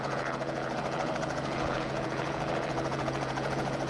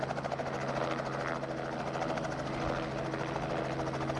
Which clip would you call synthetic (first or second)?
first